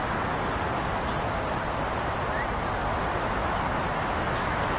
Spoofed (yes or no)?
yes